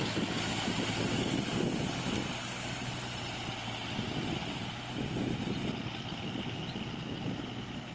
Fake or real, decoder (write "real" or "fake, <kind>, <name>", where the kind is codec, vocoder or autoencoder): real